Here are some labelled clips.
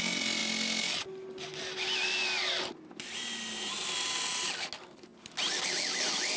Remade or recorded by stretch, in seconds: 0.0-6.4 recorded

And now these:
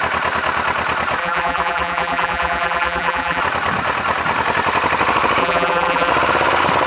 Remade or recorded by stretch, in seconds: 0.0-1.2 recorded; 1.2-3.4 remade; 3.4-5.4 recorded; 5.4-6.1 remade; 6.1-6.9 recorded

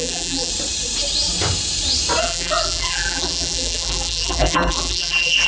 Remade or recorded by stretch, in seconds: 0.0-0.5 remade; 0.5-2.2 recorded; 2.2-5.5 remade